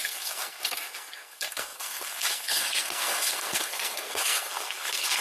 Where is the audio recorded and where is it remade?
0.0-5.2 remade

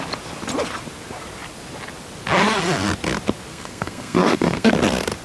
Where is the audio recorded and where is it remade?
0.0-3.5 recorded; 3.5-4.7 remade; 4.7-5.2 recorded

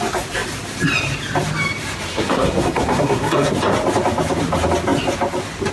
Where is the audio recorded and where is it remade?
0.0-2.1 recorded; 2.1-3.5 remade; 3.5-5.7 recorded

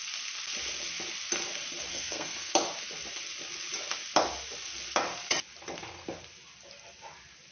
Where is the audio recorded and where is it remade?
0.0-1.9 recorded; 1.9-2.5 remade; 2.5-7.5 recorded

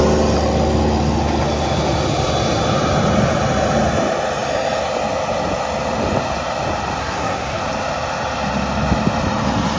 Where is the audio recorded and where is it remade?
0.0-7.0 recorded; 7.0-7.6 remade; 7.6-9.8 recorded